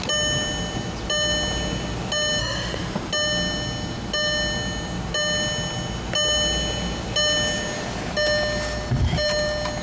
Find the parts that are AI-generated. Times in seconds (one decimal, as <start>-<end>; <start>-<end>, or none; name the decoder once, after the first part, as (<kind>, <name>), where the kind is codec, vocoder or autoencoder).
2.4-3.1 (autoencoder, DAC-VAE)

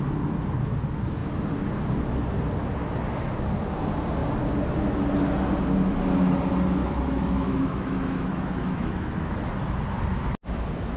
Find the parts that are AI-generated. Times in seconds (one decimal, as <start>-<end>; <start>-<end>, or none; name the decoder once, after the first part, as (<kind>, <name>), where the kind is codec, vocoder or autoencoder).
6.8-9.5 (autoencoder, DAC-VAE)

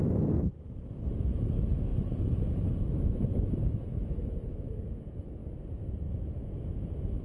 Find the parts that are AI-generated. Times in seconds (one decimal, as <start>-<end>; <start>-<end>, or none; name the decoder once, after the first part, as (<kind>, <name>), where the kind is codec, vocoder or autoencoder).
0.0-5.4 (autoencoder, DAC-VAE); 6.1-7.2

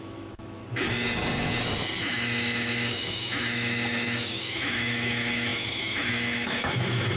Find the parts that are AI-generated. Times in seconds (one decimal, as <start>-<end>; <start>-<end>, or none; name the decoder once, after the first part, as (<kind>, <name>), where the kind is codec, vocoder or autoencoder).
0.0-0.6 (autoencoder, DAC-VAE); 2.0-7.2

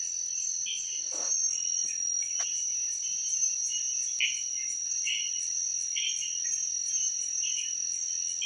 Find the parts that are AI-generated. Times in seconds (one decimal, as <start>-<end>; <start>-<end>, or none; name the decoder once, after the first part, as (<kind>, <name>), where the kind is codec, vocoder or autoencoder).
none

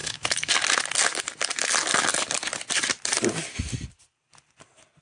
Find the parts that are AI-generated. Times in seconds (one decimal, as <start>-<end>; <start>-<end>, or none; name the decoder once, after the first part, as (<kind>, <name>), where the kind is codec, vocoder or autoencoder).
0.0-0.5 (autoencoder, DAC-VAE)

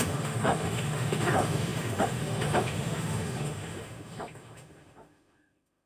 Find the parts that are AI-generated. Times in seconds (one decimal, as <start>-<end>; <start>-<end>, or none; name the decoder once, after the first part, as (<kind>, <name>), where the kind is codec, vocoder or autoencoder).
0.0-5.9 (autoencoder, DAC-VAE)